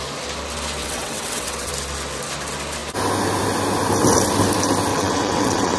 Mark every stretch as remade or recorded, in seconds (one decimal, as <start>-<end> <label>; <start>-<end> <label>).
0.0-0.8 recorded; 0.8-1.7 remade; 1.7-4.9 recorded; 4.9-5.8 remade